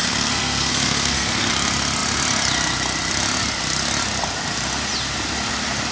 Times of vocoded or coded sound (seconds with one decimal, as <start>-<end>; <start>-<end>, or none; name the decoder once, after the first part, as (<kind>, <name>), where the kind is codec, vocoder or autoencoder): 0.0-1.5 (codec, SNAC)